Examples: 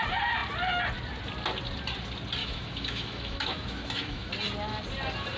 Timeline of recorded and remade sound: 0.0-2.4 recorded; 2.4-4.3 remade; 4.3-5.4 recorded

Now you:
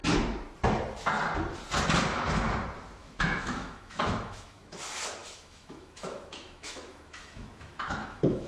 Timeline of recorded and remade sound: 0.0-3.0 recorded; 3.0-4.8 remade; 4.8-5.2 recorded; 5.2-8.5 remade

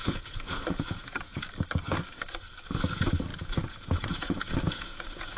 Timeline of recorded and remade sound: 0.0-1.4 remade; 1.4-3.3 recorded; 3.3-5.4 remade

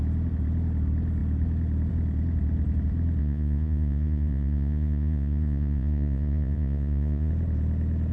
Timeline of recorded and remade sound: 0.0-3.2 recorded; 3.2-7.3 remade; 7.3-8.1 recorded

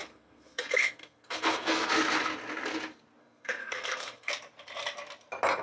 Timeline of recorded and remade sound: 0.0-1.9 remade; 1.9-3.2 recorded; 3.2-4.3 remade; 4.3-5.6 recorded

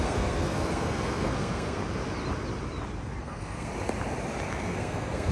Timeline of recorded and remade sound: 0.0-1.8 remade; 1.8-3.2 recorded; 3.2-3.7 remade; 3.7-4.5 recorded; 4.5-5.3 remade

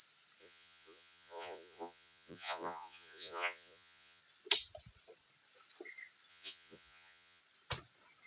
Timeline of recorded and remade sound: 0.0-0.4 recorded; 0.4-4.2 remade; 4.2-6.3 recorded; 6.3-7.4 remade; 7.4-8.3 recorded

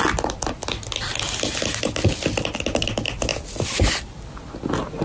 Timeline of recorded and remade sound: 0.0-5.0 recorded